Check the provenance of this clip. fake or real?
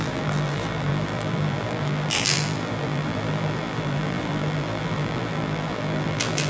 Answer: fake